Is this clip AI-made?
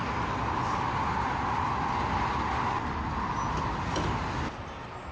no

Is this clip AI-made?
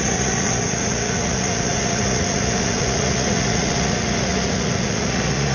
yes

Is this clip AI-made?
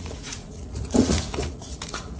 yes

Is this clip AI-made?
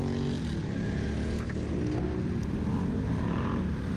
no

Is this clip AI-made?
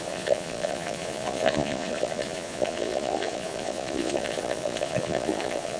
yes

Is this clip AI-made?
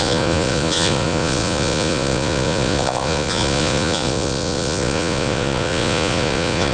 yes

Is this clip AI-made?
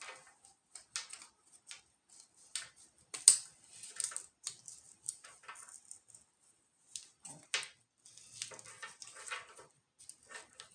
no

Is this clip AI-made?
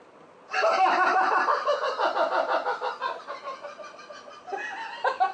no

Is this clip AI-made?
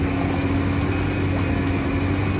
no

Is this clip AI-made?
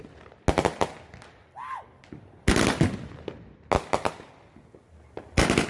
no